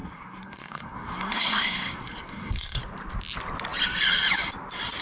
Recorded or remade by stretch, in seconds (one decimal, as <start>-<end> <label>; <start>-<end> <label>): 0.0-2.8 remade; 2.8-5.0 recorded